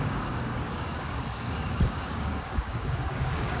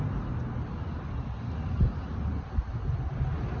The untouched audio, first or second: second